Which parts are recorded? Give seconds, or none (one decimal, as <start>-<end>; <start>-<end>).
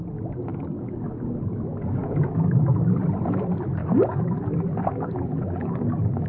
0.0-0.5; 3.0-3.8